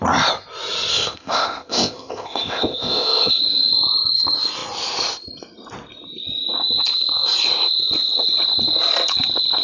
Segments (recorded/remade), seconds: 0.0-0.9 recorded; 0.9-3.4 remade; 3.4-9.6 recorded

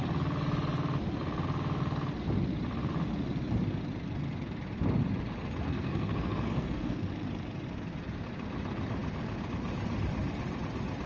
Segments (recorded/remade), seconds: 0.0-5.6 recorded; 5.6-7.1 remade; 7.1-11.1 recorded